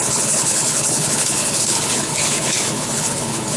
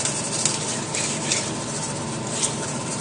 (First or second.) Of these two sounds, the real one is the second